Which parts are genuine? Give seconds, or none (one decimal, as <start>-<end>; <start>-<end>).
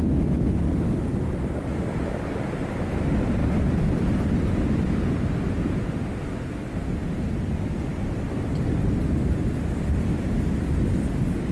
0.0-3.4; 5.1-7.9; 10.3-11.5